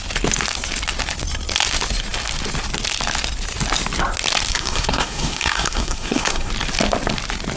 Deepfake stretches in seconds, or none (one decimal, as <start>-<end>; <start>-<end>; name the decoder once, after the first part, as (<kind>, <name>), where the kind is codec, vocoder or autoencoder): 4.5-6.5 (codec, SNAC)